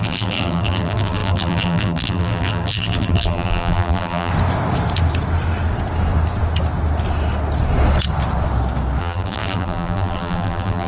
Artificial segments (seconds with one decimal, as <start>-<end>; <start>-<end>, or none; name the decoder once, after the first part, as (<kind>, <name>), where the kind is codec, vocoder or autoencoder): 0.0-4.3 (vocoder, BigVGAN v2); 9.0-10.9